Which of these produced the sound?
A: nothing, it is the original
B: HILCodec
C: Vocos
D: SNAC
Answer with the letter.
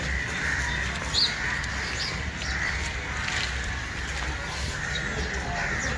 A